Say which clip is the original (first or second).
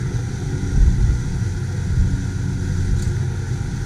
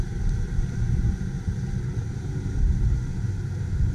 first